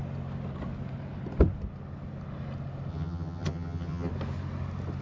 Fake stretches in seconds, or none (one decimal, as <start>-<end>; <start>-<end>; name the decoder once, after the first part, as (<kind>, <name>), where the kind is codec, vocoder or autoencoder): 2.9-4.1 (vocoder, HiFi-GAN)

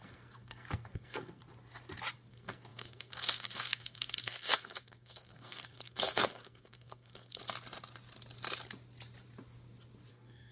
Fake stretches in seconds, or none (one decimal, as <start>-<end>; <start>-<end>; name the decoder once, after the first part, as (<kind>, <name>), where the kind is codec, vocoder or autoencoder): 0.0-1.4 (codec, SNAC); 2.3-7.4; 10.1-10.5